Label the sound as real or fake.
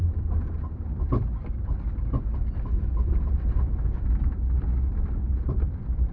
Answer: fake